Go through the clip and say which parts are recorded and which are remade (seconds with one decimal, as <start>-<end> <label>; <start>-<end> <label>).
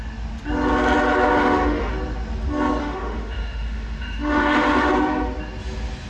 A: 0.0-1.3 recorded; 1.3-1.9 remade; 1.9-2.8 recorded; 2.8-4.9 remade; 4.9-6.1 recorded